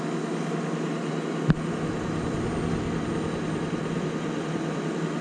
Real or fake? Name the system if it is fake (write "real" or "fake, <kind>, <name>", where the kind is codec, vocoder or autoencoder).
real